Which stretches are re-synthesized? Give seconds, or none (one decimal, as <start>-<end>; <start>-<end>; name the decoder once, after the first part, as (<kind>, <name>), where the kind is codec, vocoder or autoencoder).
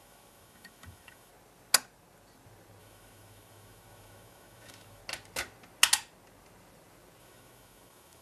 0.0-1.3 (autoencoder, DAC-VAE); 2.8-5.0; 7.2-8.2